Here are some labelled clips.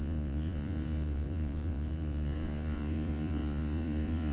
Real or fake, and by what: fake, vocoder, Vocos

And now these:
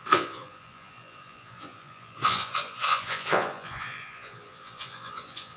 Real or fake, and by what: fake, vocoder, Vocos